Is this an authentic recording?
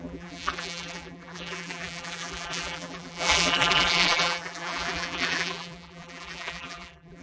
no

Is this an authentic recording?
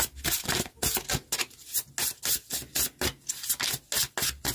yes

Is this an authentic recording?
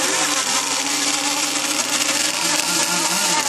no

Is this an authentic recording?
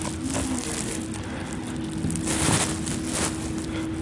yes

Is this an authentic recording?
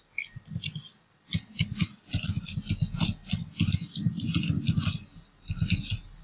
yes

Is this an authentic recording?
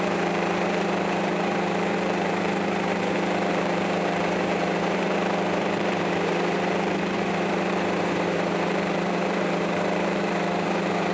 no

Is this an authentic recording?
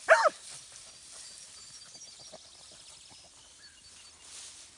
yes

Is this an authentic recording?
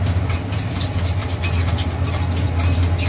yes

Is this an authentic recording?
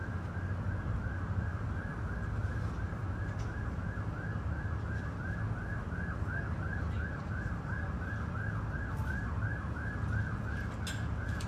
yes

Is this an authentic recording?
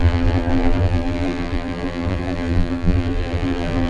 no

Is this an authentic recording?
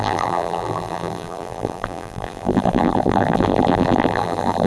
no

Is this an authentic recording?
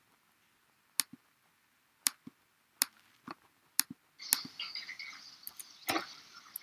yes